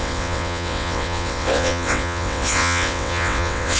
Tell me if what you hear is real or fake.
fake